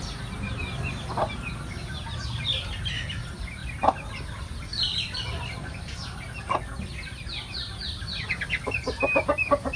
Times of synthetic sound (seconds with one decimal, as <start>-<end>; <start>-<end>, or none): none